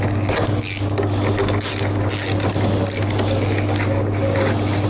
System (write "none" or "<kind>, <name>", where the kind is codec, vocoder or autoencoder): none